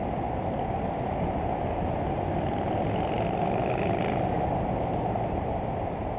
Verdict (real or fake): real